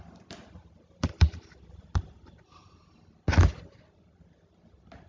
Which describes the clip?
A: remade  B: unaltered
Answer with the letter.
B